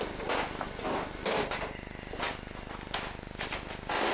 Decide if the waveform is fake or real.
real